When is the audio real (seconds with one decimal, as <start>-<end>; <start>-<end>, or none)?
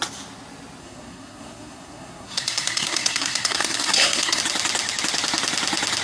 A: 0.0-0.8; 4.4-6.0